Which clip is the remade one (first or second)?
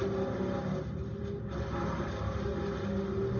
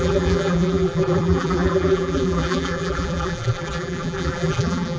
second